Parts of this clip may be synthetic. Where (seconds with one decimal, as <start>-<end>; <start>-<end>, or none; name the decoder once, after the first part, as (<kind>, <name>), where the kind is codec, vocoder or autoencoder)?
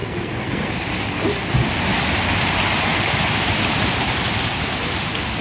0.0-0.7 (codec, SNAC)